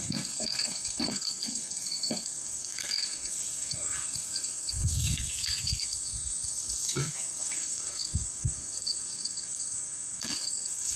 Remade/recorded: remade